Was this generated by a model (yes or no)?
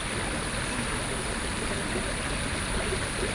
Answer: no